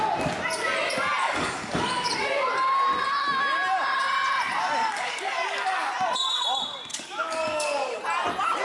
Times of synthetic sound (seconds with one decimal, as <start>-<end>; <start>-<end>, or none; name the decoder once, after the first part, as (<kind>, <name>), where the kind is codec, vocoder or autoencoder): 1.2-2.1 (codec, DAC); 4.8-5.9; 6.9-8.0